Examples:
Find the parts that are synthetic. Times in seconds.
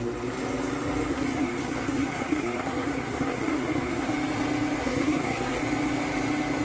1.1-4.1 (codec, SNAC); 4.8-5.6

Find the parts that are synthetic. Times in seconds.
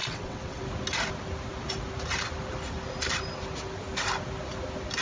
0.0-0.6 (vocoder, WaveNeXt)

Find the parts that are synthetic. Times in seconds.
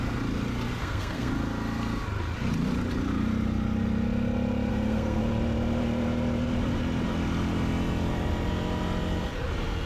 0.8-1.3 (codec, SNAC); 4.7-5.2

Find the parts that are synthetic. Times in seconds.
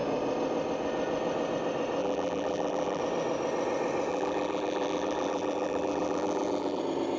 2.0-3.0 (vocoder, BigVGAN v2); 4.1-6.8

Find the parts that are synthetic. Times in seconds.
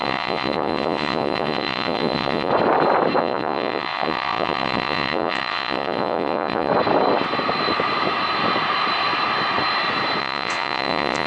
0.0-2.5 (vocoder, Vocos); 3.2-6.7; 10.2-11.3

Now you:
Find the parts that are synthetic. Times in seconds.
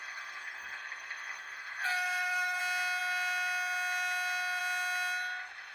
0.0-2.6 (codec, SNAC)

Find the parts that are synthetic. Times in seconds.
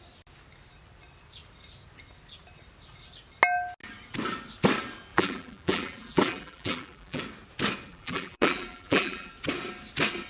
5.1-7.2 (vocoder, BigVGAN v2); 7.9-9.3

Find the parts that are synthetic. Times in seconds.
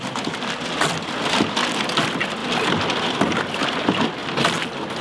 none